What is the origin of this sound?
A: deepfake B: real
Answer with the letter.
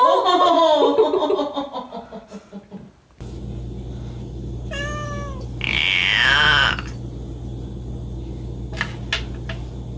B